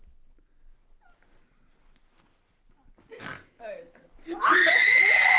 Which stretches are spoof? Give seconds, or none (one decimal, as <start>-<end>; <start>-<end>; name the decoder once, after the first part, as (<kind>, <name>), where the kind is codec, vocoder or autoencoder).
4.6-5.4 (vocoder, Vocos)